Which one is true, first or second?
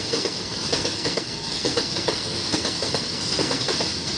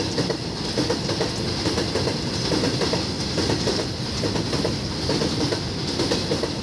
second